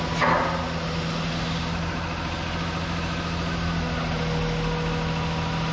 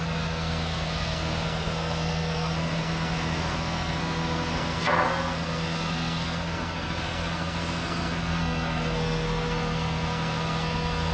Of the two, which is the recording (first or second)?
first